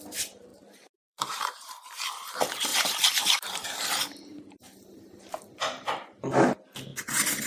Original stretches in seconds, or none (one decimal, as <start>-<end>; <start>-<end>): 0.0-0.5; 1.7-2.7; 3.7-4.3; 6.2-7.5